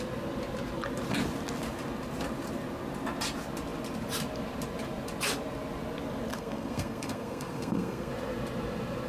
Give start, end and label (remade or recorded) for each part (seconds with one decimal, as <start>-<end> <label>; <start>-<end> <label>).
0.0-6.3 recorded; 6.3-8.1 remade; 8.1-9.1 recorded